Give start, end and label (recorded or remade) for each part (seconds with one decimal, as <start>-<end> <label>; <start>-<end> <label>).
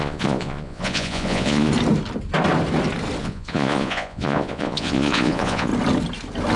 0.0-1.7 remade; 1.7-3.2 recorded; 3.2-5.7 remade; 5.7-6.6 recorded